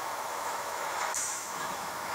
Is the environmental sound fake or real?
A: fake